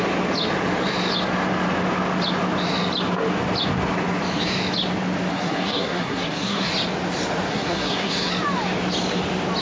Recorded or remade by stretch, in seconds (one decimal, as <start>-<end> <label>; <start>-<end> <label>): 0.0-5.3 recorded; 5.3-6.7 remade; 6.7-7.5 recorded; 7.5-8.3 remade; 8.3-9.6 recorded